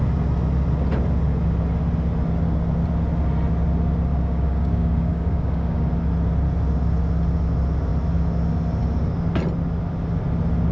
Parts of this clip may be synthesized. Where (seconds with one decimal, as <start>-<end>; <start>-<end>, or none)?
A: 4.1-5.9